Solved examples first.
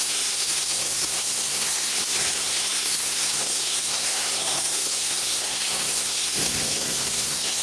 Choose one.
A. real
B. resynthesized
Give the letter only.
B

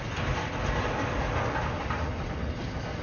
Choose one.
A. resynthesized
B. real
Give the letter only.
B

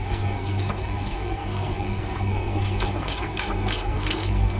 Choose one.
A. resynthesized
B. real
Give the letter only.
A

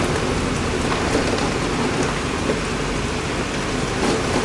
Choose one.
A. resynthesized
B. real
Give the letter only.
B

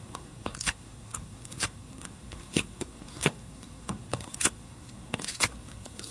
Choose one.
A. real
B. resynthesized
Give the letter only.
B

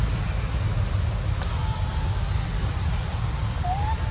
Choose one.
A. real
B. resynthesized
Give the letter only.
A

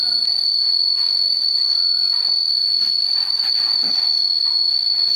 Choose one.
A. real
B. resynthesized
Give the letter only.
A